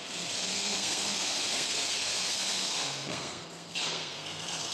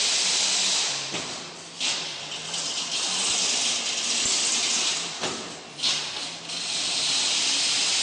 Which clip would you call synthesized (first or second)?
first